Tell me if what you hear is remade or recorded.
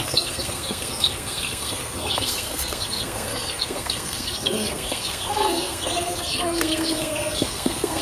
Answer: remade